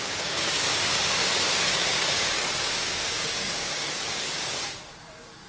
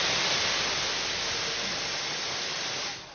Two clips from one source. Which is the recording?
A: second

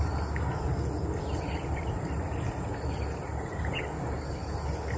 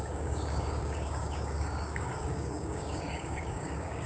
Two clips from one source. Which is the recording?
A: first